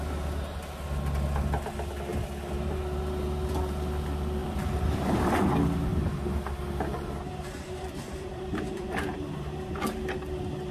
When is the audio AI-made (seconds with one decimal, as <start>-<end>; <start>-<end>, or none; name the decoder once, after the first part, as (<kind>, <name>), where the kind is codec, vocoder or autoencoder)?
4.4-5.4 (vocoder, BigVGAN v2); 5.9-9.8